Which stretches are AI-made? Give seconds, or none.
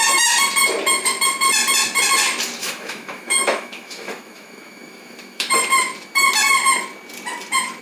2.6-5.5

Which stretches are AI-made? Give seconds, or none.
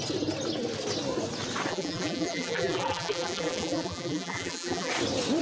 1.7-4.9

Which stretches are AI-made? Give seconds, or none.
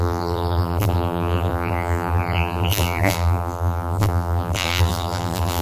0.0-5.6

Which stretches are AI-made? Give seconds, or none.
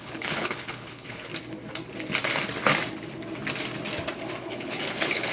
0.0-1.3; 4.4-5.3